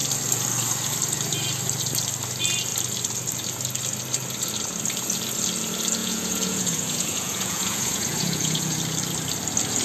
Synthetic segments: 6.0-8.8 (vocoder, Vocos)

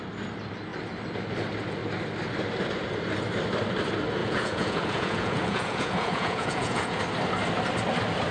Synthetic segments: 4.2-7.0 (vocoder, Vocos)

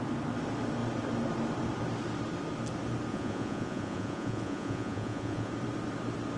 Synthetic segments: 3.1-5.5 (vocoder, Vocos)

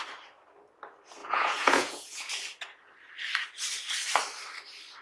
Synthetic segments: 1.2-2.3 (vocoder, Vocos)

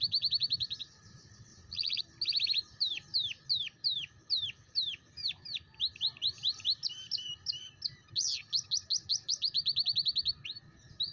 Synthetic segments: 1.5-2.0 (vocoder, Vocos)

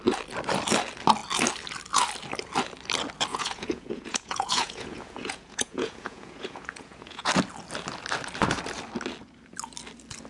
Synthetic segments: 3.3-7.3 (vocoder, Vocos)

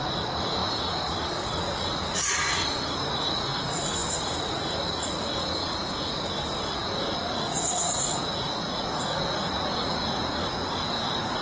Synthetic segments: 0.0-11.4 (vocoder, Vocos)